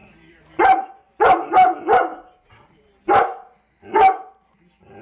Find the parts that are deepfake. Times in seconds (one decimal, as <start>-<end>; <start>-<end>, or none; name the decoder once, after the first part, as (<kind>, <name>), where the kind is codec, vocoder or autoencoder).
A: none